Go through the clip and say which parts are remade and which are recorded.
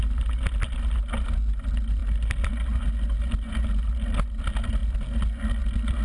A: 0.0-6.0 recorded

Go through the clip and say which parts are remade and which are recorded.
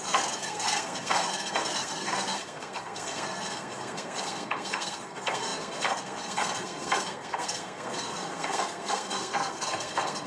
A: 0.0-10.3 remade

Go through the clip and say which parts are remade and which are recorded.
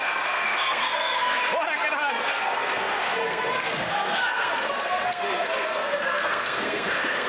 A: 0.0-1.4 remade; 1.4-2.1 recorded; 2.1-7.3 remade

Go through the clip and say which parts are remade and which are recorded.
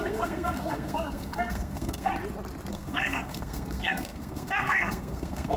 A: 0.0-2.1 remade; 2.1-2.7 recorded; 2.7-5.6 remade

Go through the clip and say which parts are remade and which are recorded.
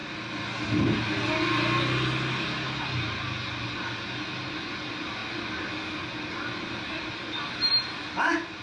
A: 0.0-8.6 recorded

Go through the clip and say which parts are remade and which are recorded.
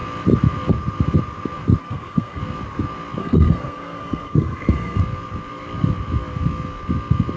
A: 0.0-1.8 recorded; 1.8-2.4 remade; 2.4-3.2 recorded; 3.2-5.0 remade; 5.0-7.4 recorded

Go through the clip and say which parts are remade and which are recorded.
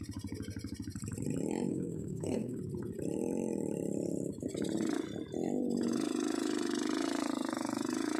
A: 0.0-1.7 recorded; 1.7-2.6 remade; 2.6-8.2 recorded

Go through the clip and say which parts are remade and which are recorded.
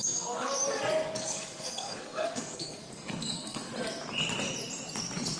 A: 0.0-0.6 remade; 0.6-1.2 recorded; 1.2-3.7 remade; 3.7-5.4 recorded